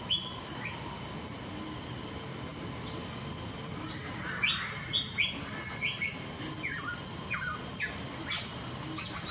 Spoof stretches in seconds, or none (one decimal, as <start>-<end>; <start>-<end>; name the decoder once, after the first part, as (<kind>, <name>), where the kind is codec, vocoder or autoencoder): none